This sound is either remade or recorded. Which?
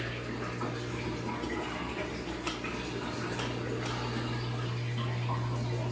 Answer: recorded